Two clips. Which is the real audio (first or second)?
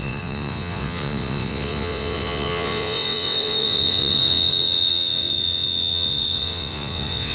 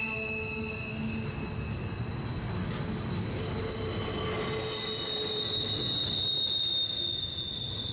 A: second